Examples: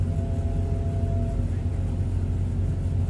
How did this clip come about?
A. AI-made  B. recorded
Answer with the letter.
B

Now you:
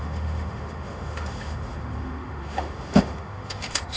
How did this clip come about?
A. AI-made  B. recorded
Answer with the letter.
A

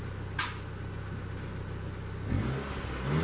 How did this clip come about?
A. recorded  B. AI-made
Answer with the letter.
A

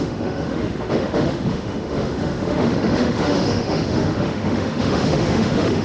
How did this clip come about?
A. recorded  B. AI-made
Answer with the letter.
B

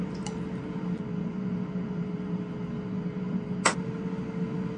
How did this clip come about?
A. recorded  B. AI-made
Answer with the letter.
A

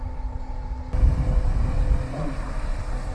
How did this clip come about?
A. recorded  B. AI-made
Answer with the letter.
A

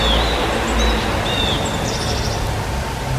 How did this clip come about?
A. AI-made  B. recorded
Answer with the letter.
B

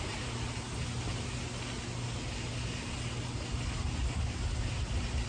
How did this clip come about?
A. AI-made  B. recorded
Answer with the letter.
B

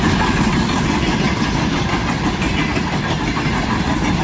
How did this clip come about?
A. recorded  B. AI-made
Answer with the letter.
A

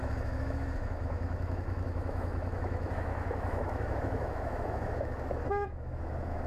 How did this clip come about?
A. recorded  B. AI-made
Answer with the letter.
B